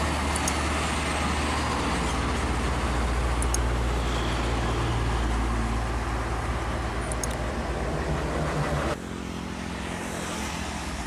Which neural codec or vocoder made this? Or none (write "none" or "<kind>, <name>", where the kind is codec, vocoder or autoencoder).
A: none